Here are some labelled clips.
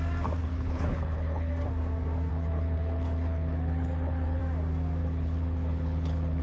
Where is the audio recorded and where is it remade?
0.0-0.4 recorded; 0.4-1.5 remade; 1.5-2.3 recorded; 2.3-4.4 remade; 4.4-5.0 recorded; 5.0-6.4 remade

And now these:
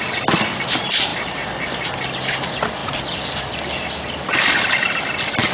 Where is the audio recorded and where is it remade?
0.0-1.1 recorded; 1.1-1.9 remade; 1.9-5.5 recorded